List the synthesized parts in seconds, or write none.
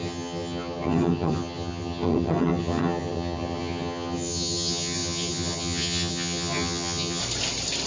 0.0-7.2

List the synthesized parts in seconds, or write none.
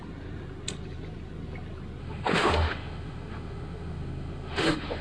2.0-5.0